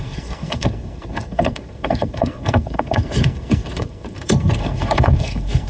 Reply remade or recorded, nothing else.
remade